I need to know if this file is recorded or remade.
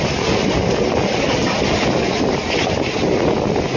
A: recorded